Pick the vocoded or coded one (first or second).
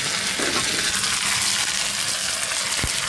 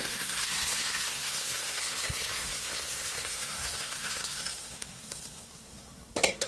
second